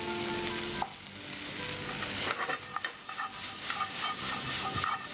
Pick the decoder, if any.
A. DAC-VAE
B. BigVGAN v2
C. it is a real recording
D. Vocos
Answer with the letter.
C